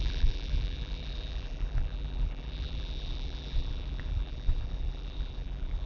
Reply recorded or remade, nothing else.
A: remade